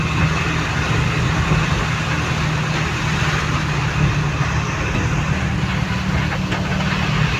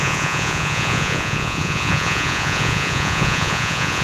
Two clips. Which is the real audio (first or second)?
first